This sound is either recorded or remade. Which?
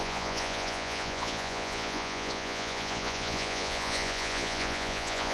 remade